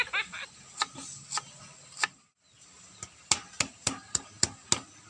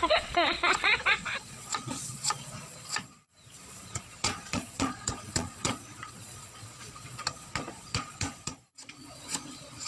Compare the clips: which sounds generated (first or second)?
second